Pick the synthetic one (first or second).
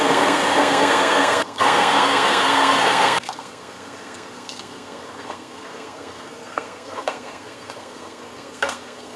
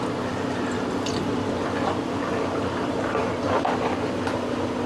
first